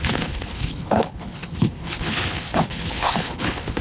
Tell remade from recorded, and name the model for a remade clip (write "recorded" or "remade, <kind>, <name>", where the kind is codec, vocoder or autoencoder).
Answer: remade, codec, HILCodec